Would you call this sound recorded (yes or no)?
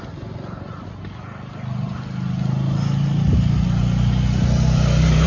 yes